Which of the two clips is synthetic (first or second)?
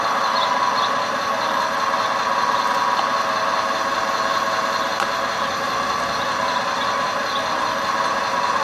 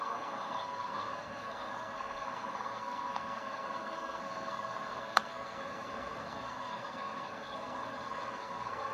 second